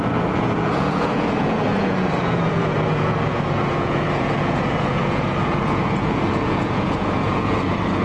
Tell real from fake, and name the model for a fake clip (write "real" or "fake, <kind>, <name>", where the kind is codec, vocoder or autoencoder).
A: fake, vocoder, Vocos